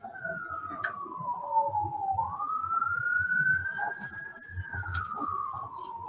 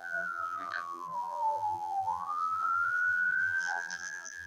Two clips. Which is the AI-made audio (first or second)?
second